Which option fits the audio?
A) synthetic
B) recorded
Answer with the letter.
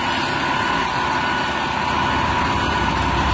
B